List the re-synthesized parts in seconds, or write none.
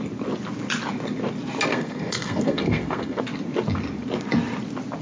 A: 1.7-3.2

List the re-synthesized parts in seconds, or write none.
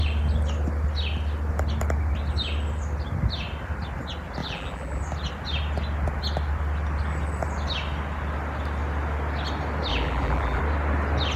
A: 4.4-5.0; 9.9-10.6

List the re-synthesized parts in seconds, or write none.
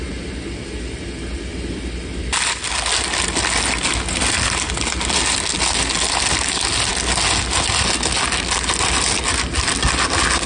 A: none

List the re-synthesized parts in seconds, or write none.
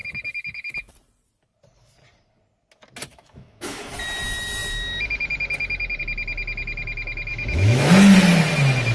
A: 0.0-0.9; 3.1-3.9; 7.3-7.9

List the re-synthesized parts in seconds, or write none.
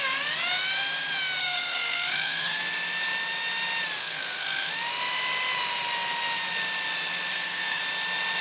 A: 1.4-2.6; 4.0-4.7; 7.3-7.8